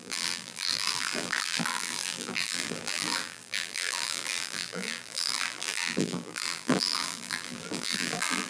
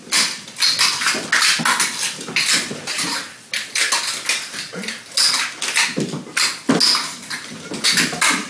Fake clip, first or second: first